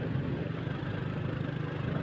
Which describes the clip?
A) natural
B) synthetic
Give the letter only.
A